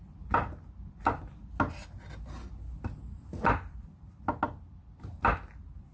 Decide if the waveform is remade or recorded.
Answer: recorded